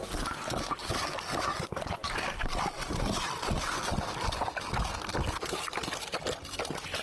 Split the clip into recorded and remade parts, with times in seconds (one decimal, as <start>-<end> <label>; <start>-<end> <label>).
0.0-2.0 recorded; 2.0-3.8 remade; 3.8-7.0 recorded